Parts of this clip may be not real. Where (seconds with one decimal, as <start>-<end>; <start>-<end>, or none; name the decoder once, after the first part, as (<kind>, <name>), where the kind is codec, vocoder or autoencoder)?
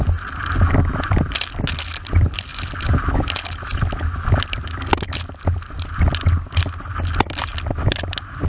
none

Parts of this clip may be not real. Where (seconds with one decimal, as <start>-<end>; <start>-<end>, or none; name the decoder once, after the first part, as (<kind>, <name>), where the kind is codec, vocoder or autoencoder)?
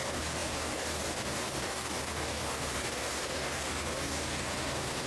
0.0-5.1 (codec, DAC)